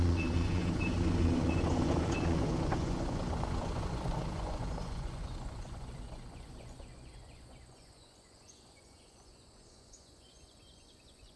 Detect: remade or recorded remade